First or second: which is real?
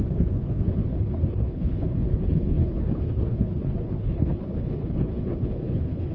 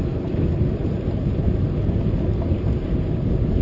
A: second